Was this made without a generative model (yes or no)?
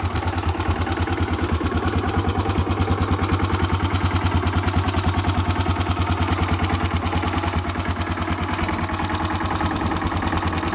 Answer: yes